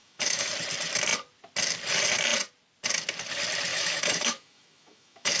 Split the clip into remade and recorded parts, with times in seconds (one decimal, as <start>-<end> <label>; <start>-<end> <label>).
0.0-0.5 remade; 0.5-3.7 recorded; 3.7-5.4 remade